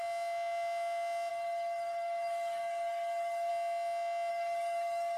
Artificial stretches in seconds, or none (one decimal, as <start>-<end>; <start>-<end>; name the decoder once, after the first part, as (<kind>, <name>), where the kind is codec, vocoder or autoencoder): 1.3-3.5 (codec, DAC); 4.3-5.2